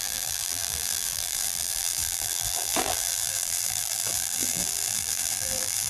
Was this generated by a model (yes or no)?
yes